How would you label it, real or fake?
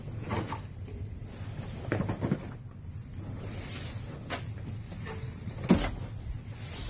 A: real